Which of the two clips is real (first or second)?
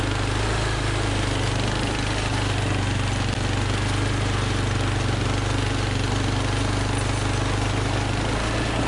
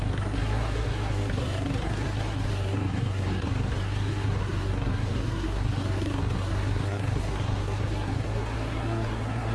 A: first